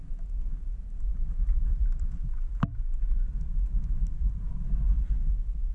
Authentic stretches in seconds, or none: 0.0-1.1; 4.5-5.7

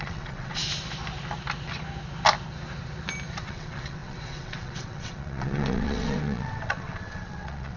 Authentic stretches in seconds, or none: 0.6-3.4

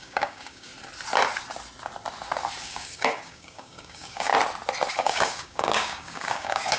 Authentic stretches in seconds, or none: 0.7-2.6; 4.3-4.9

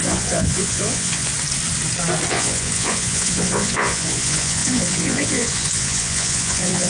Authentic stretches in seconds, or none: 1.3-2.3

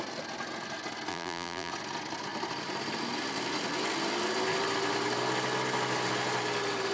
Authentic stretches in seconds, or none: 0.0-1.1; 1.7-6.9

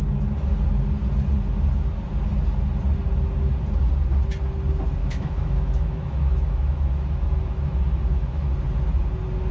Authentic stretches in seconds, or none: 0.0-5.0; 8.5-9.5